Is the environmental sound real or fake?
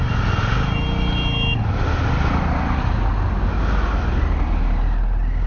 real